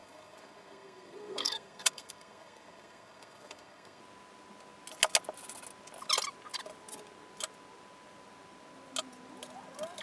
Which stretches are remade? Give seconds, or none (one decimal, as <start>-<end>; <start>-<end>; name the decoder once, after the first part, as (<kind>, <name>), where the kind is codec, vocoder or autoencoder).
0.0-4.0 (codec, SNAC)